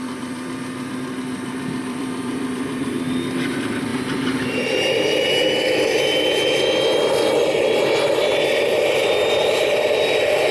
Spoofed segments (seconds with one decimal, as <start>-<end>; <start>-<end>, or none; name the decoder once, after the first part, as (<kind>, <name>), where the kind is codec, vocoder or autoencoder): 0.0-6.4 (vocoder, BigVGAN v2); 8.2-10.5